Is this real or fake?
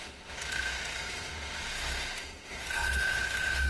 fake